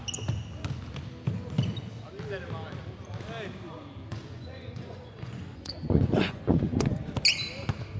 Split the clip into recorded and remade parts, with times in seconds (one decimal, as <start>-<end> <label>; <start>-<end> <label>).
0.0-4.1 recorded; 4.1-7.0 remade; 7.0-8.0 recorded